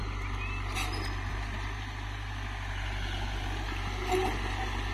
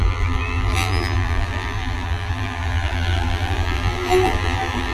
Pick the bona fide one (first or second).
first